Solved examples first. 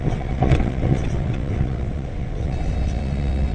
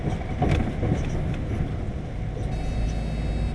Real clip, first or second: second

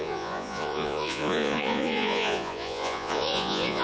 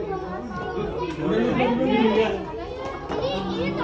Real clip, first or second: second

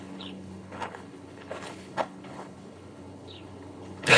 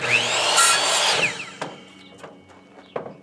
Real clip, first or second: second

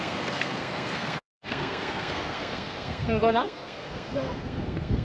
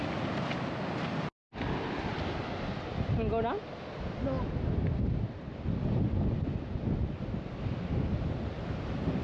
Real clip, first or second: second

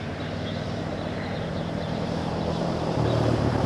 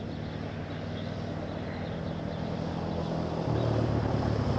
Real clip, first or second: second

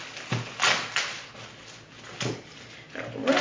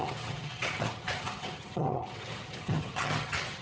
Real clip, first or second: first